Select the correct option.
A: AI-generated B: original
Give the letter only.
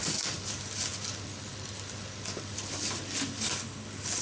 B